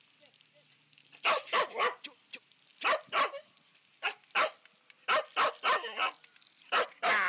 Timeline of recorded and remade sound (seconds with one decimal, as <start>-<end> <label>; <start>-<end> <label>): 0.0-7.3 recorded